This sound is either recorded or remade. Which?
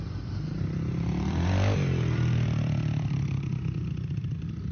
remade